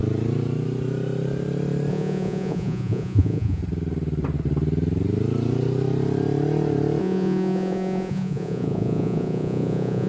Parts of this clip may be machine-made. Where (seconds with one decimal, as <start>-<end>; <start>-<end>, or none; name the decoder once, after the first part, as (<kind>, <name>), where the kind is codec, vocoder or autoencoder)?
1.9-3.6 (vocoder, Vocos); 7.0-10.1